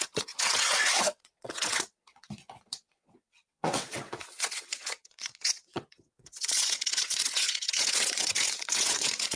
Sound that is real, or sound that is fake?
fake